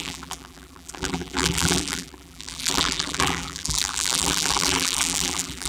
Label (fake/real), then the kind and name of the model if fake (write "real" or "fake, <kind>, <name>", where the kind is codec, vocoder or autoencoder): fake, vocoder, BigVGAN v2